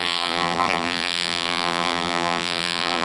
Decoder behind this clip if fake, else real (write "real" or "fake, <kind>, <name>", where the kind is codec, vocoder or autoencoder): fake, vocoder, BigVGAN v2